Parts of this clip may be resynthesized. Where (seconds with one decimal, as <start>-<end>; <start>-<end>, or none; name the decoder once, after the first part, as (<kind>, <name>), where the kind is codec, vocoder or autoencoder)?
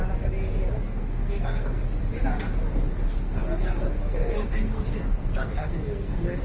0.7-1.8 (codec, SNAC); 2.9-6.4